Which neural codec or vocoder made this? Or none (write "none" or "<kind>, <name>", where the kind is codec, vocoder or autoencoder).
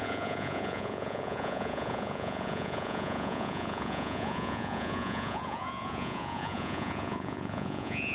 vocoder, Vocos